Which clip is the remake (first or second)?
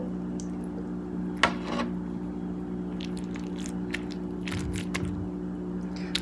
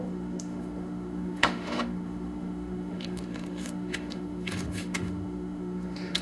second